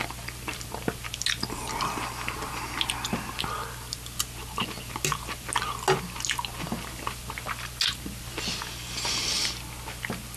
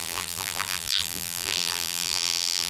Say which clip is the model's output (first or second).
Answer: second